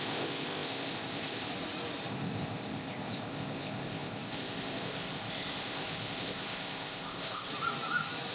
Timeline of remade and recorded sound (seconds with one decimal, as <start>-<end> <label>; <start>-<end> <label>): 0.0-1.5 remade; 1.5-2.1 recorded; 2.1-7.5 remade; 7.5-8.3 recorded

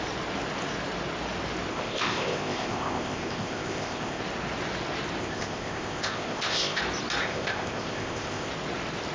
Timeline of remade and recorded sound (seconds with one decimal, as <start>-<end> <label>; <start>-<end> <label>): 0.0-1.7 recorded; 1.7-4.2 remade; 4.2-5.2 recorded; 5.2-6.8 remade; 6.8-7.2 recorded; 7.2-8.5 remade; 8.5-9.1 recorded

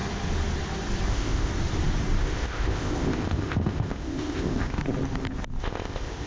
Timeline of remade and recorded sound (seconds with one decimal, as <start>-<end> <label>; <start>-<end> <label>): 0.0-1.1 recorded; 1.1-1.5 remade; 1.5-2.2 recorded; 2.2-4.8 remade; 4.8-5.6 recorded; 5.6-6.3 remade

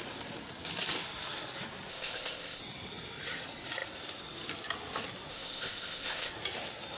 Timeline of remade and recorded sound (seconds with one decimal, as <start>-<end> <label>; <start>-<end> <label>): 0.0-1.9 recorded; 1.9-2.6 remade; 2.6-5.3 recorded; 5.3-6.3 remade; 6.3-7.0 recorded

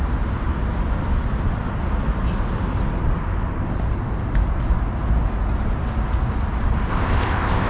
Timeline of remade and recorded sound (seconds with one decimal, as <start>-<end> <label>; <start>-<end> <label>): 0.0-6.9 recorded; 6.9-7.7 remade

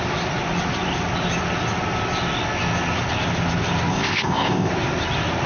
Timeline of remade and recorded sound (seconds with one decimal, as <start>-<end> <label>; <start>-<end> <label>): 0.0-3.9 recorded; 3.9-4.7 remade; 4.7-5.5 recorded